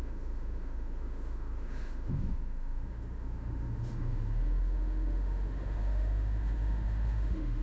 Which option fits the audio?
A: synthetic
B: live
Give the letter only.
A